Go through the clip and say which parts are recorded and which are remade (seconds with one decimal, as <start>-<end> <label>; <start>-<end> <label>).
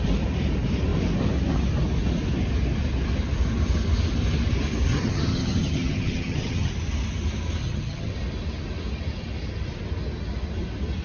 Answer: 0.0-4.9 recorded; 4.9-6.7 remade; 6.7-7.6 recorded; 7.6-8.1 remade; 8.1-11.0 recorded